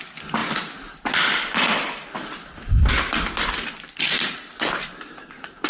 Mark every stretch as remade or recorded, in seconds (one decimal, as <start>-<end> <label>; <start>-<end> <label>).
0.0-5.7 recorded